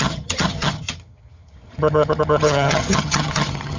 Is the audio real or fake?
fake